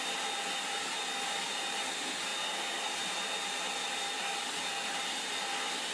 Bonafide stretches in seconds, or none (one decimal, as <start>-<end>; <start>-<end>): 0.0-5.9